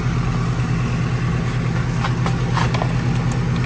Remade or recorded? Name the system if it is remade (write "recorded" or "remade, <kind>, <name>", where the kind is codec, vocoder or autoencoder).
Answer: recorded